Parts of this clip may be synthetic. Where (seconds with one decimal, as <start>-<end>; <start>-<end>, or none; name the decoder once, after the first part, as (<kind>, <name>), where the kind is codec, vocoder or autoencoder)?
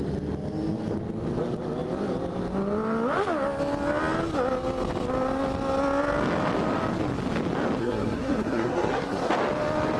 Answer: 7.8-9.3 (codec, SNAC)